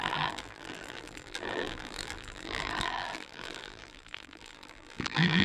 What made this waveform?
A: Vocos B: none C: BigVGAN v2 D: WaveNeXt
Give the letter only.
C